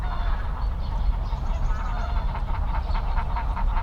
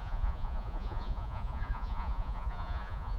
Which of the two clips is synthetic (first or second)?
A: second